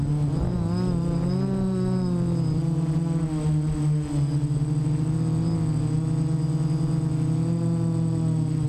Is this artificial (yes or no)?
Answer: no